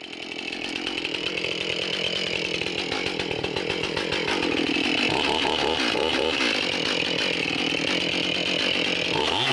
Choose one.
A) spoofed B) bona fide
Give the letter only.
B